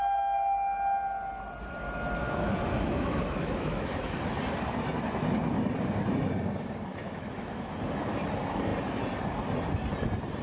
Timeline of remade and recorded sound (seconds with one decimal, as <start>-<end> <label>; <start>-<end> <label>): 0.0-2.2 recorded; 2.2-4.2 remade; 4.2-6.9 recorded; 6.9-7.8 remade; 7.8-10.4 recorded